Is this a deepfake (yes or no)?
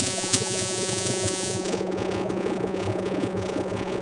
yes